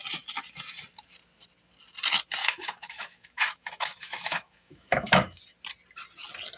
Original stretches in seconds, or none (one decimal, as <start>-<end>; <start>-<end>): 0.0-2.4; 5.4-6.6